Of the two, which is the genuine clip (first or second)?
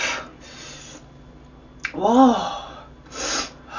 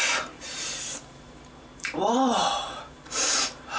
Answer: first